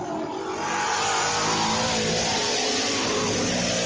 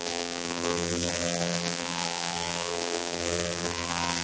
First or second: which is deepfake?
second